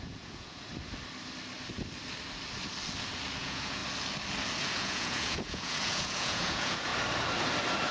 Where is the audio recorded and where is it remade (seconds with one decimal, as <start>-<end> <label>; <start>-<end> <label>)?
0.0-0.7 remade; 0.7-3.4 recorded; 3.4-3.8 remade; 3.8-4.6 recorded; 4.6-6.9 remade; 6.9-7.9 recorded